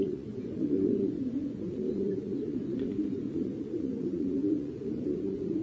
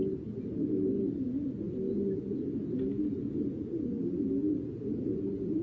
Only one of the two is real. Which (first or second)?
second